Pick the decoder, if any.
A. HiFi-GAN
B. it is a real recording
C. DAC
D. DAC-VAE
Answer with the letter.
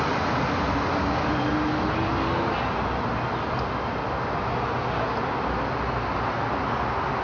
B